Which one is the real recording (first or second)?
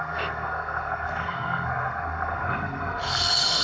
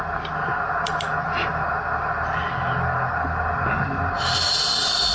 second